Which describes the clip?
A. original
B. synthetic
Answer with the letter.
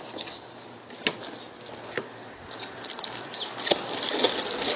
A